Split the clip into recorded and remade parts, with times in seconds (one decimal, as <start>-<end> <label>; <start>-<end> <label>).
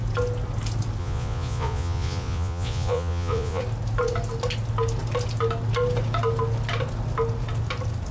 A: 0.0-1.0 recorded; 1.0-3.6 remade; 3.6-8.1 recorded